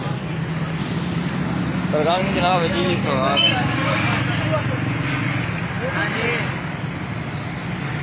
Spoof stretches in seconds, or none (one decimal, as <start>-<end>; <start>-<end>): 2.2-4.2